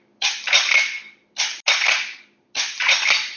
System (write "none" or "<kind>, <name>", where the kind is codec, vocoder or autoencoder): none